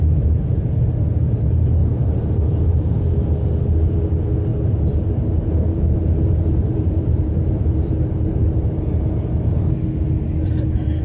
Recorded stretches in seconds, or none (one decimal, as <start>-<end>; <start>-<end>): 0.0-1.8; 3.1-4.5; 9.7-11.0